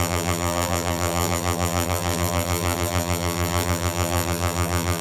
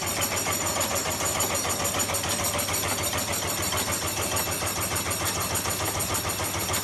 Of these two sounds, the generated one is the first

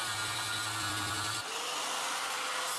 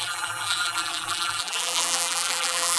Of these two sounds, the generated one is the second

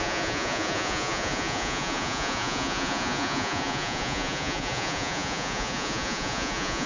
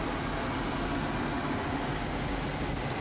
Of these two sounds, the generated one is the first